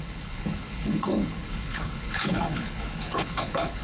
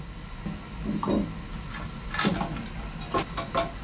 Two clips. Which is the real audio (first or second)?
second